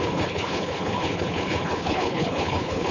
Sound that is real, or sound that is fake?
fake